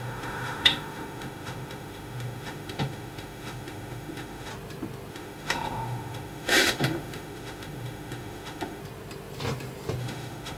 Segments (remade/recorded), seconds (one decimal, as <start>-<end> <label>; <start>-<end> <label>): 0.0-4.5 remade; 4.5-5.1 recorded; 5.1-8.8 remade; 8.8-10.0 recorded; 10.0-10.6 remade